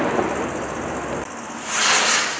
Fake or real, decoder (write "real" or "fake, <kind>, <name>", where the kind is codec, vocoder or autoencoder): real